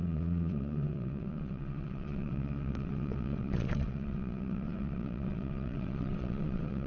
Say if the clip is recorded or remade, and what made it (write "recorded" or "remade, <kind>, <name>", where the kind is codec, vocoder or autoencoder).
remade, vocoder, WaveNeXt